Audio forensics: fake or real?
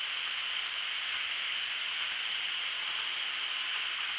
real